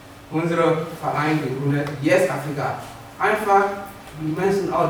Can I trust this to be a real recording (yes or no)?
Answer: no